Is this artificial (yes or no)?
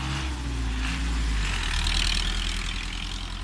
no